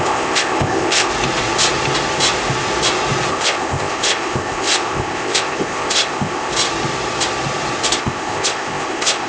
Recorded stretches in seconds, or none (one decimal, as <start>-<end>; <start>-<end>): 1.1-3.3; 6.5-8.0